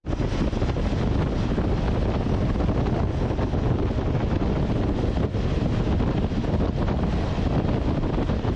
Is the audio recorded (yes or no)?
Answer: yes